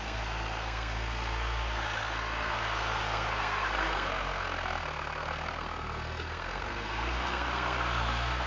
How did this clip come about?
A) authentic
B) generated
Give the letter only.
B